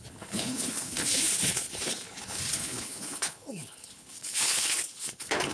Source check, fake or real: fake